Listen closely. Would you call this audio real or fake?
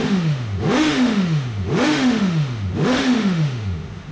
fake